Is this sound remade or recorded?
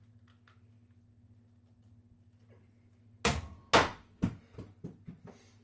recorded